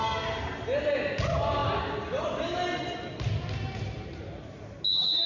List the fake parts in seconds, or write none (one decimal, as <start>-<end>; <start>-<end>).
none